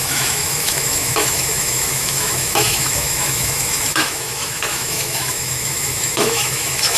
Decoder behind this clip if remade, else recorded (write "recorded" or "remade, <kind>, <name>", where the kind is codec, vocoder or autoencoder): remade, autoencoder, DAC-VAE